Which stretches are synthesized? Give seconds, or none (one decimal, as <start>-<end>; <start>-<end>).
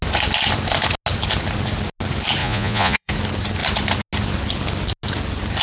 2.4-3.1